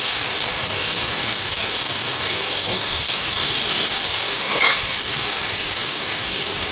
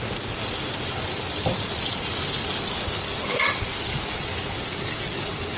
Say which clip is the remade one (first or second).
first